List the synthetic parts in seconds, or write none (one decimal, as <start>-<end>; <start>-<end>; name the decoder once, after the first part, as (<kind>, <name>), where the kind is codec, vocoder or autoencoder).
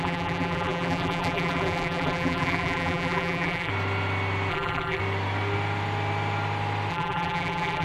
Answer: 0.0-3.7 (vocoder, BigVGAN v2); 4.5-5.0; 6.9-7.8